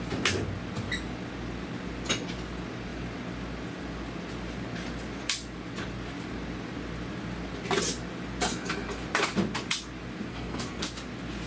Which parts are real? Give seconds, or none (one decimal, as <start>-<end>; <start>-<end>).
0.0-10.3; 10.8-11.5